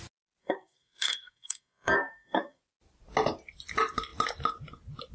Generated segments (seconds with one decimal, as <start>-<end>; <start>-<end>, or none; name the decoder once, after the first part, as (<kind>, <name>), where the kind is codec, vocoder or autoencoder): 0.4-2.6 (codec, SNAC)